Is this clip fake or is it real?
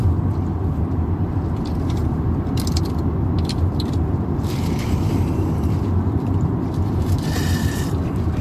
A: fake